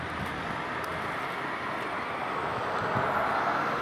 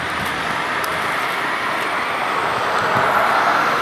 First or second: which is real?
first